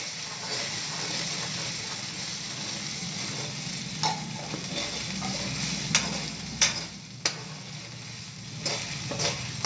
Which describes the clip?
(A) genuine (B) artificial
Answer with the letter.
A